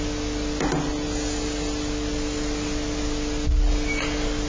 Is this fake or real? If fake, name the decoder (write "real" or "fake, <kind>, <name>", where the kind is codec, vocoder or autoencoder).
real